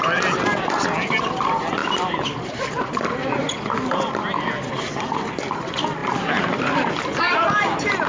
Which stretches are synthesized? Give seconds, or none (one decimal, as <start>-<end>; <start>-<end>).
1.8-3.5; 6.0-8.1